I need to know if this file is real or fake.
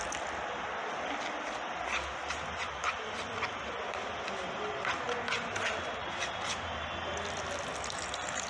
real